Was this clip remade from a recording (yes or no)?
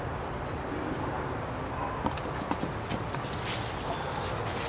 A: no